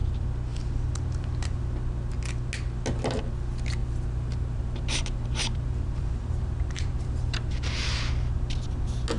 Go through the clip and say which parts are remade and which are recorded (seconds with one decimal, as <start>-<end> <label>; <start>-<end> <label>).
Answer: 0.0-3.8 recorded; 3.8-8.1 remade; 8.1-9.2 recorded